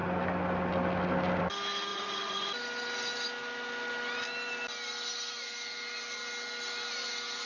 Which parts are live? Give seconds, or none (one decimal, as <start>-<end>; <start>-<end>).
0.0-1.9; 2.5-7.5